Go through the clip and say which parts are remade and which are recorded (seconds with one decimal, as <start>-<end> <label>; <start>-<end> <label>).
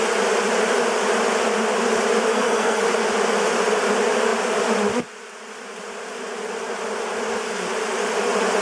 0.0-2.3 recorded; 2.3-2.8 remade; 2.8-8.6 recorded